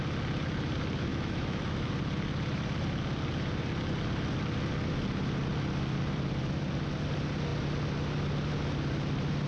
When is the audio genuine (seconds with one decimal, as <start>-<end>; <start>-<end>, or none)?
0.0-1.1; 1.9-9.5